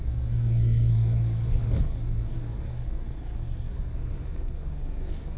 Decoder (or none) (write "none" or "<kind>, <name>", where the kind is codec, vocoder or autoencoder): codec, SNAC